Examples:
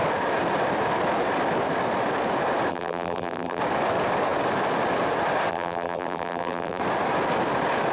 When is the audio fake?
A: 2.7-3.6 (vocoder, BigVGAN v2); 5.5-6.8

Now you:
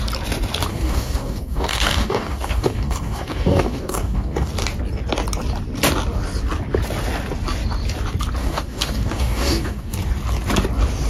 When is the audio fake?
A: 0.7-4.5 (codec, DAC); 8.4-10.0

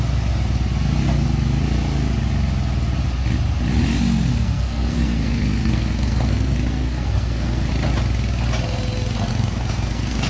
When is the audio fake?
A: 4.3-7.7 (codec, SNAC); 9.3-10.3